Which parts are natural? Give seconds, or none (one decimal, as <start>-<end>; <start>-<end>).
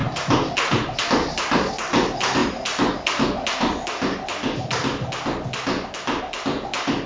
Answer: 1.0-7.1